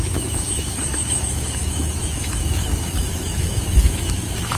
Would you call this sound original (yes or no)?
no